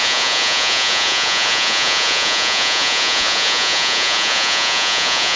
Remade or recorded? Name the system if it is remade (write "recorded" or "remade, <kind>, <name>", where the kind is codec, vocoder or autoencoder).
remade, vocoder, Vocos